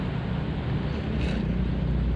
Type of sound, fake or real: real